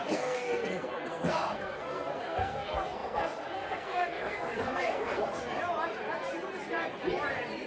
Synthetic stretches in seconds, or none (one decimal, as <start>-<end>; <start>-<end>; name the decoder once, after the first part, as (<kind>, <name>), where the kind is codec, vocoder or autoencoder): 0.0-5.4 (codec, SNAC)